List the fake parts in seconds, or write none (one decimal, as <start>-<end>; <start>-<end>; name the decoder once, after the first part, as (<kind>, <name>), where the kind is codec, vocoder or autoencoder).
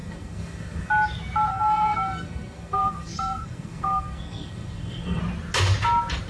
0.0-0.9 (codec, SNAC); 1.5-5.2